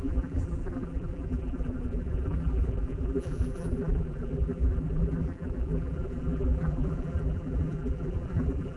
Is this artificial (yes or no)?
yes